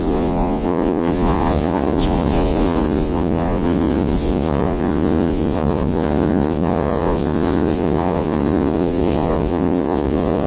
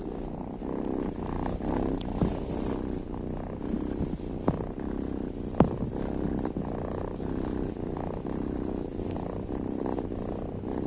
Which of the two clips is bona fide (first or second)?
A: second